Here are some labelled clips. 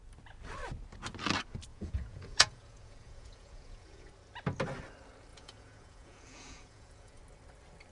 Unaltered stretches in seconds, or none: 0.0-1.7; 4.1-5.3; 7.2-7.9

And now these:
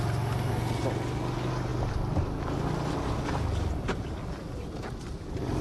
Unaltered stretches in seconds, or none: 0.0-5.6

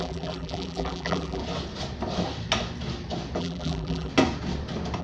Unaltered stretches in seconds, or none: 1.4-3.4; 4.1-5.0

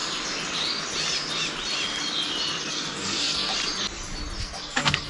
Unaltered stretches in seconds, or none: 0.0-2.7; 3.5-4.4

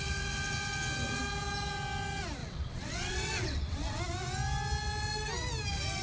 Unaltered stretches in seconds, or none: 0.0-2.4; 4.0-6.0

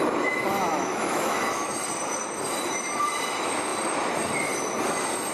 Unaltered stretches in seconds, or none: 0.0-0.7; 1.7-5.3

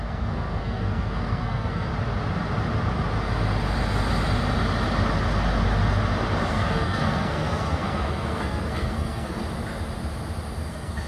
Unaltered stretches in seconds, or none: 1.9-6.5; 9.4-10.7